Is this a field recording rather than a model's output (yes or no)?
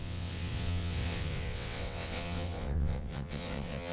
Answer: no